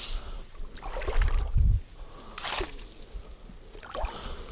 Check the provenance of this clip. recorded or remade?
recorded